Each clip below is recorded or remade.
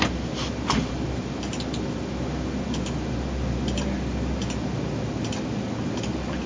recorded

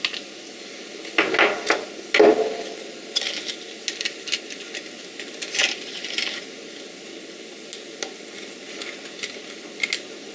recorded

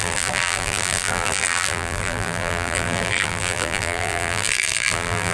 remade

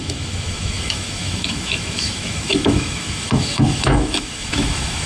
remade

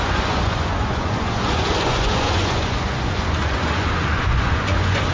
remade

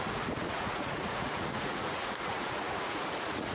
remade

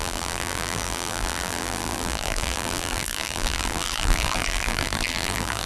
remade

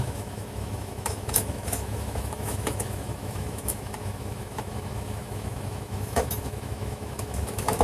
remade